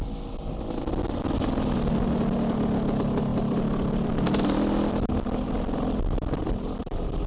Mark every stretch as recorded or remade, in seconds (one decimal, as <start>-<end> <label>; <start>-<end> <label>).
0.0-7.3 recorded